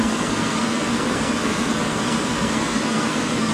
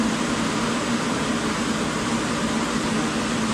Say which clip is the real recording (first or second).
second